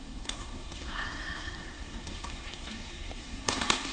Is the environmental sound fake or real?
fake